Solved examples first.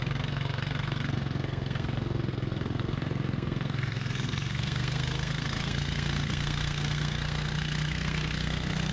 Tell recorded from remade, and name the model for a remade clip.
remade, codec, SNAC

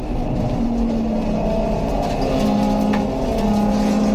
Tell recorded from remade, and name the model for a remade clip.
recorded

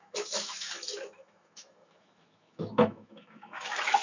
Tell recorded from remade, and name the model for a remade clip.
remade, autoencoder, DAC-VAE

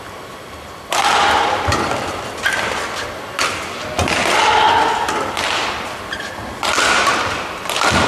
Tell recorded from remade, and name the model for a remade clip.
recorded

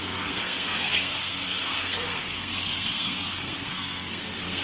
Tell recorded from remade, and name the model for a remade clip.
remade, codec, SNAC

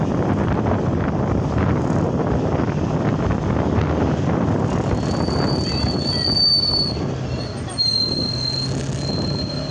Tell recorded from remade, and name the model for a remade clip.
recorded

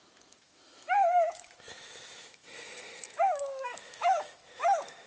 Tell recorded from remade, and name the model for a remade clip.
remade, autoencoder, DAC-VAE